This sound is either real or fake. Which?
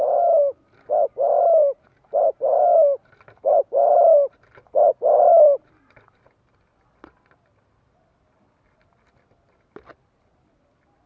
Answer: real